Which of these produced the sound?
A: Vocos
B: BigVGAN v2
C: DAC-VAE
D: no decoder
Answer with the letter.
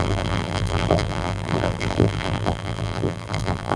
B